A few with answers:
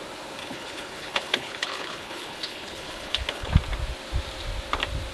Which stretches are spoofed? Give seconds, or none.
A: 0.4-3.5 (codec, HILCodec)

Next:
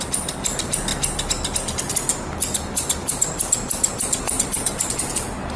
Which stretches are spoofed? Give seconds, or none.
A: 0.0-0.9 (vocoder, BigVGAN v2); 4.3-5.6

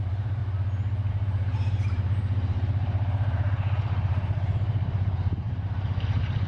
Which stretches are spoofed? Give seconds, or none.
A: 0.0-0.4 (vocoder, BigVGAN v2); 1.1-6.5

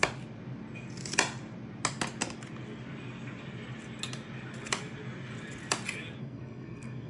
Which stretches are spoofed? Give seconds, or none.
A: 6.2-7.1 (codec, SNAC)

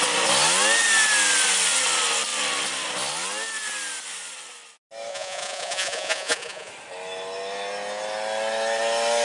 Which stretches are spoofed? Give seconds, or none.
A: 5.1-6.7 (vocoder, Vocos)

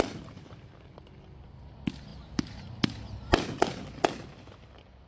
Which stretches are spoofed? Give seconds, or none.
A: none

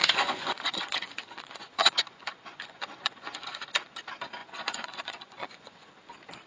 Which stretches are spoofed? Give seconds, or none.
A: 0.0-3.9 (vocoder, Vocos); 4.4-5.9

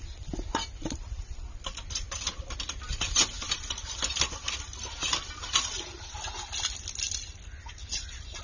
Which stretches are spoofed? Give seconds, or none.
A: none